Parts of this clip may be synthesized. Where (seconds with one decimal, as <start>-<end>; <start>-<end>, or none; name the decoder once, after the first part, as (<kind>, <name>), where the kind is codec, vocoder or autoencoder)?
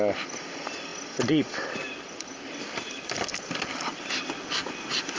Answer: none